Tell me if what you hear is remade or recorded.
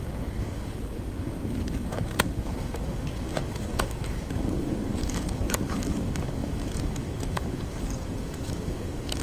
remade